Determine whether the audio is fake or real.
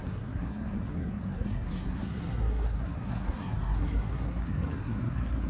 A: fake